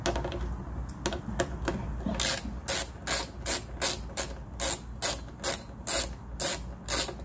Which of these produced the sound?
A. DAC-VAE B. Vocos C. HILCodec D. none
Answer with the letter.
D